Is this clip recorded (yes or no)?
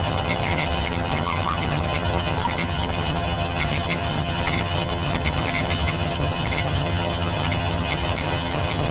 no